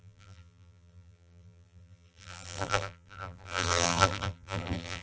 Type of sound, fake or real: fake